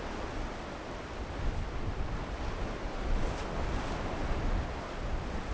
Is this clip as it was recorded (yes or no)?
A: yes